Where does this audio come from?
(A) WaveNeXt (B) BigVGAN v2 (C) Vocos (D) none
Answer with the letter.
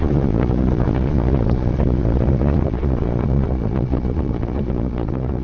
C